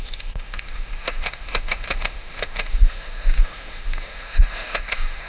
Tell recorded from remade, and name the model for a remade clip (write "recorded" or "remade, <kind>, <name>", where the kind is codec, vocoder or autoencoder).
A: remade, autoencoder, DAC-VAE